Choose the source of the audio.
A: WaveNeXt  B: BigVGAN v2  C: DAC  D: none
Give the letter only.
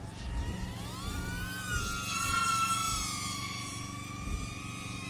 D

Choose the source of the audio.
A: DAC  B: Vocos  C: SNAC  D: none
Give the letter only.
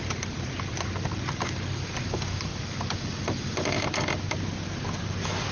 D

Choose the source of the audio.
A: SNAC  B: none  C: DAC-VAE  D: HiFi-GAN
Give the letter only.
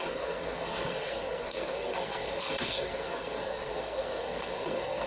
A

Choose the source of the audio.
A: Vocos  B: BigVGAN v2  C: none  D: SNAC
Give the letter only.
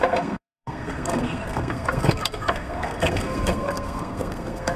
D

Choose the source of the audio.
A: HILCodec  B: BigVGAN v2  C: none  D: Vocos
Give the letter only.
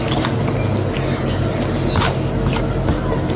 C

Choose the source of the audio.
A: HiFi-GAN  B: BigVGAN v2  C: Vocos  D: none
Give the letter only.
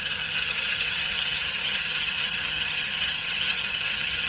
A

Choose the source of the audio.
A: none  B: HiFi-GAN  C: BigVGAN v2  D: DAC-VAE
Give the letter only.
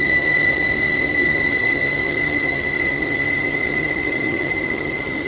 B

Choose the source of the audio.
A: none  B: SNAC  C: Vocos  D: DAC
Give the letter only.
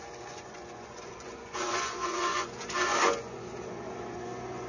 C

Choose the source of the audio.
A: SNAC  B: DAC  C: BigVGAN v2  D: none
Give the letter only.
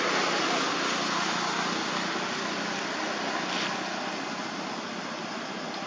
D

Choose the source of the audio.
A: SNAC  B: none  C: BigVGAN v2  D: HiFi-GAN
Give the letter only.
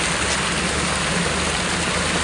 B